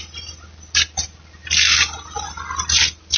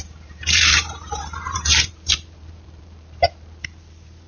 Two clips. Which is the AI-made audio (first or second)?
second